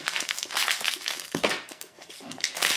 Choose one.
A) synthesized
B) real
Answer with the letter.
A